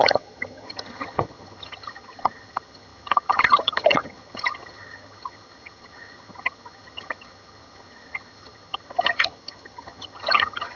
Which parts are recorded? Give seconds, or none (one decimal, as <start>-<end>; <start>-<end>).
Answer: none